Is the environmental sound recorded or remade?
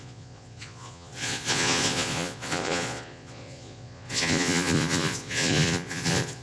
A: remade